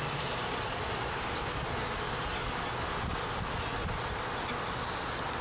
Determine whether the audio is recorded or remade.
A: recorded